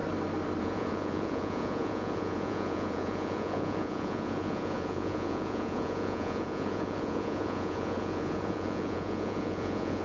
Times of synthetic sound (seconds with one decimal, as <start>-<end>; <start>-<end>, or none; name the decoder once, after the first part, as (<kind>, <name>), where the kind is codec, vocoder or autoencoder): 0.6-10.0 (vocoder, Vocos)